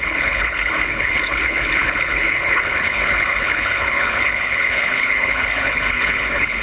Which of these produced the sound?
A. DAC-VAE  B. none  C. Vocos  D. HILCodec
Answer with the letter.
D